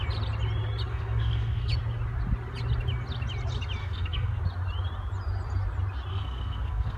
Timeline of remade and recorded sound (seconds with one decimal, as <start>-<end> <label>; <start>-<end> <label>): 0.0-0.9 recorded; 0.9-1.7 remade; 1.7-3.8 recorded; 3.8-4.4 remade; 4.4-6.1 recorded; 6.1-7.0 remade

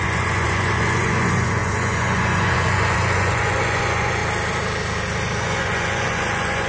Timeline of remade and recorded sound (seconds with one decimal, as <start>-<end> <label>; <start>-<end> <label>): 0.0-4.2 remade; 4.2-5.4 recorded; 5.4-6.7 remade

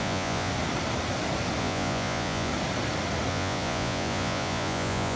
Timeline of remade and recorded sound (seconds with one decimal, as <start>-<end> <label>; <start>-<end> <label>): 0.0-0.5 remade; 0.5-1.6 recorded; 1.6-2.5 remade; 2.5-3.3 recorded; 3.3-5.2 remade

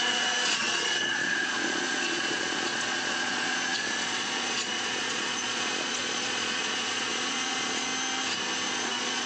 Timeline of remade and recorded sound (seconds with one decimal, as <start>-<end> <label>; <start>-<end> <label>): 0.0-7.9 remade; 7.9-8.7 recorded; 8.7-9.3 remade